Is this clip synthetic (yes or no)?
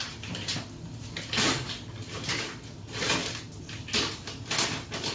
no